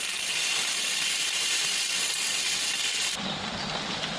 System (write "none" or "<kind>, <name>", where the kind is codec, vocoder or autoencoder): vocoder, BigVGAN v2